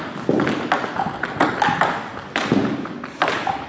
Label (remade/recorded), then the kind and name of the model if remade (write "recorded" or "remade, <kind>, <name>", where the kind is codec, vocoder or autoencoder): recorded